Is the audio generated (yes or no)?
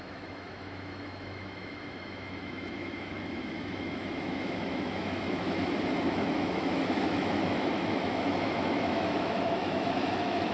yes